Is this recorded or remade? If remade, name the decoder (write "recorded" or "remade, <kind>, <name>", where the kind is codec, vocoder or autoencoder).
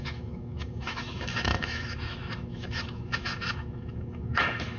remade, autoencoder, DAC-VAE